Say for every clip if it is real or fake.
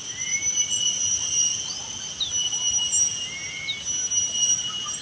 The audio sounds real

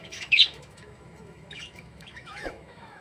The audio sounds fake